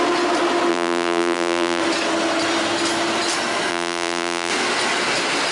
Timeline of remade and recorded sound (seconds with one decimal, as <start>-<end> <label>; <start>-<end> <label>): 0.0-0.7 recorded; 0.7-1.8 remade; 1.8-3.7 recorded; 3.7-4.5 remade; 4.5-5.5 recorded